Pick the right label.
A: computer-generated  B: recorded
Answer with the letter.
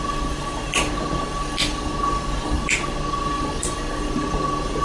B